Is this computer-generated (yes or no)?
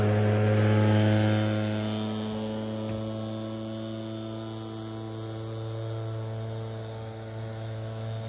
no